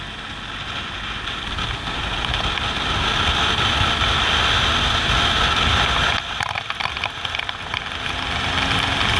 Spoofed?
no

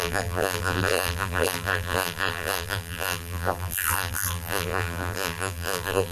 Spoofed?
yes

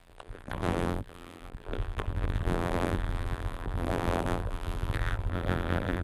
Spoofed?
yes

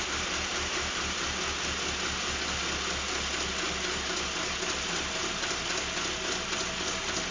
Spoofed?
no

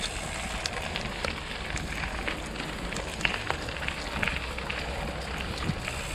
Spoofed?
no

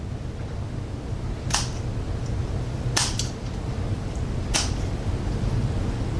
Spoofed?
yes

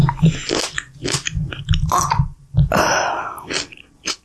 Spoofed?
no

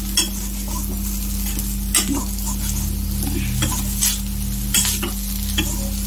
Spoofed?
no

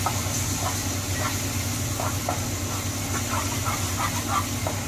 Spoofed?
no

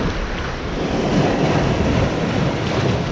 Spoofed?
no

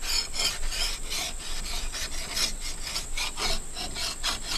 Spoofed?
no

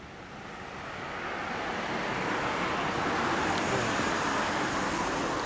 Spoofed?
no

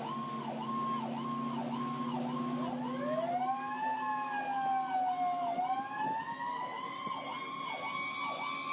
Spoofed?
no